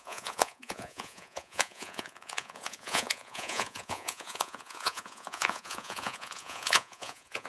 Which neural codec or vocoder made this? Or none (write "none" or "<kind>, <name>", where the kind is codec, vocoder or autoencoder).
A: vocoder, Vocos